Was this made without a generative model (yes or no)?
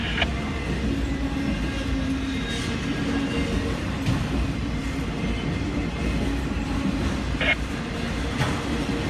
yes